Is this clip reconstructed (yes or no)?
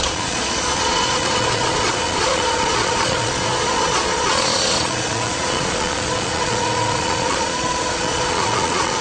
yes